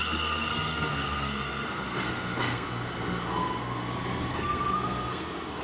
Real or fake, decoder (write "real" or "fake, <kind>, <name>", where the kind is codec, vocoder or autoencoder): fake, codec, SNAC